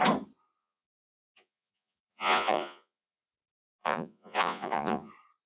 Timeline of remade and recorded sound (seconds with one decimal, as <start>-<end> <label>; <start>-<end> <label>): 0.0-0.6 recorded; 0.6-3.2 remade; 3.2-3.8 recorded; 3.8-5.1 remade; 5.1-5.5 recorded